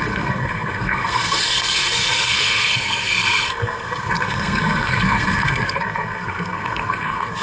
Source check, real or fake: fake